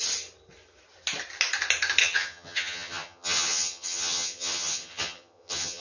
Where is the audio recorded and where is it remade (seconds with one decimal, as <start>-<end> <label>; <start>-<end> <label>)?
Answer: 0.0-2.0 recorded; 2.0-5.8 remade